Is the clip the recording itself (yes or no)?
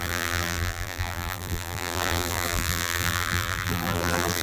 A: no